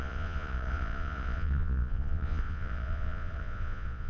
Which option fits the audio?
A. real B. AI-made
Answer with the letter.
B